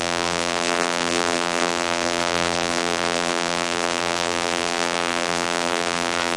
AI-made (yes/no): yes